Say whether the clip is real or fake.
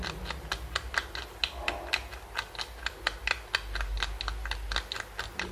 real